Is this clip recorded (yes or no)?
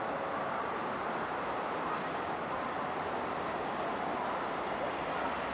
yes